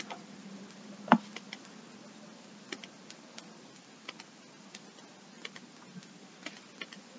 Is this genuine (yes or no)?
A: yes